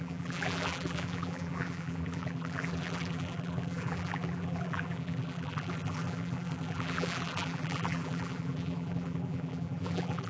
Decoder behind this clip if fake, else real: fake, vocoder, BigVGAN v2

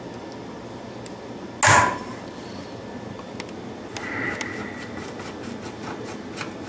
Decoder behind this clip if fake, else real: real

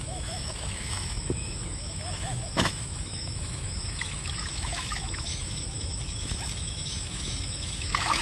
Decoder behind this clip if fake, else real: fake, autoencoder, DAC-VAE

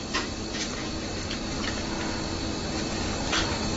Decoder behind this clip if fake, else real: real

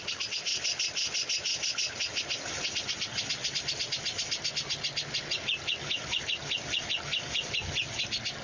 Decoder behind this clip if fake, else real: real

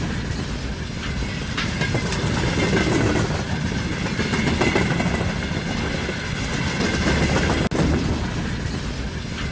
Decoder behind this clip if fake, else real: real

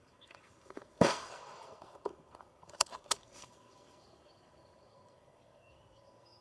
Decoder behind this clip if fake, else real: fake, codec, SNAC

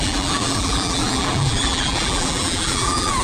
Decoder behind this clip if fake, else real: fake, vocoder, BigVGAN v2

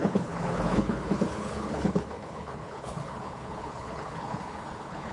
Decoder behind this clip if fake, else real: fake, codec, HILCodec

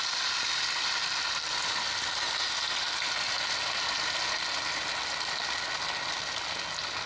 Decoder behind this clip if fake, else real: real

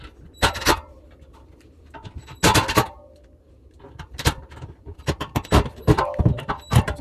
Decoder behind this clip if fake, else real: real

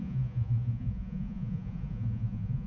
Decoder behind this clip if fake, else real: fake, vocoder, Vocos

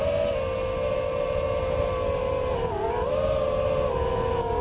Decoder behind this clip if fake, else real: real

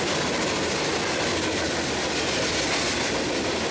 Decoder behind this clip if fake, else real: real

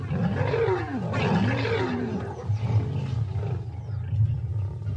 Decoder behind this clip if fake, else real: real